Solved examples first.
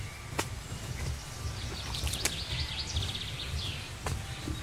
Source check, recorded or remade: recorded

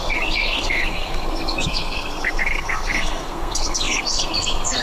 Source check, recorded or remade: remade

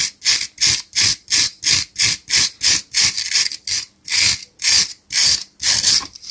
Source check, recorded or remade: recorded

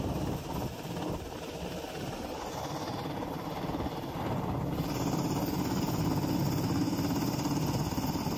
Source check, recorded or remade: recorded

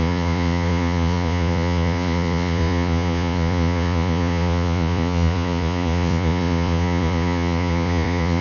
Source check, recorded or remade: remade